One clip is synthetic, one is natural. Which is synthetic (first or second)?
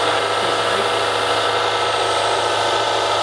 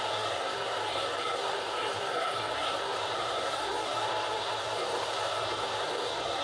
second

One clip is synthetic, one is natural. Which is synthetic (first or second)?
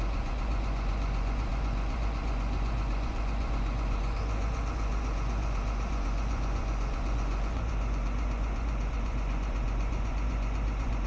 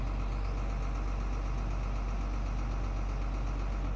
first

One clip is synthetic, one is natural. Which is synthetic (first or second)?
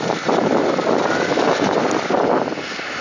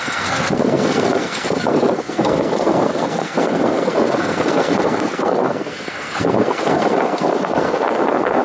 second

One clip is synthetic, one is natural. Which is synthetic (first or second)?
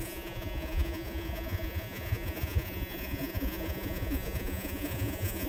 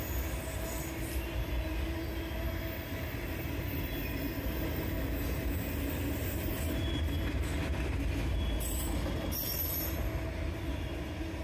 first